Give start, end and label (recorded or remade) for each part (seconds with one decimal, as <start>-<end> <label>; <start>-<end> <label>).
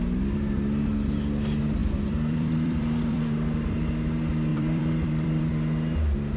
0.0-1.8 recorded; 1.8-3.9 remade; 3.9-4.5 recorded; 4.5-5.5 remade; 5.5-6.4 recorded